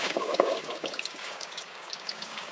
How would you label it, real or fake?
fake